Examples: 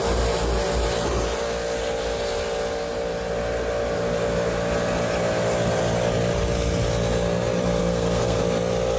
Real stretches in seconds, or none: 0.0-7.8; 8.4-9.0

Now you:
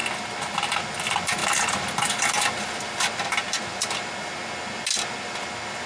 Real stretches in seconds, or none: 0.0-5.9

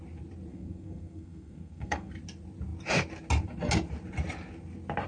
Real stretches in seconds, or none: 0.0-0.5; 2.1-5.1

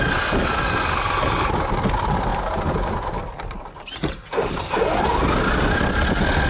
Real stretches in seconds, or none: 0.0-6.5